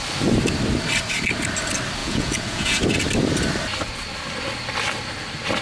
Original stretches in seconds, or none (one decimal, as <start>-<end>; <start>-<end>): 0.0-2.0; 2.8-5.6